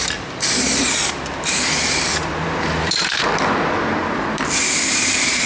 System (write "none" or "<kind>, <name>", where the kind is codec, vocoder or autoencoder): vocoder, BigVGAN v2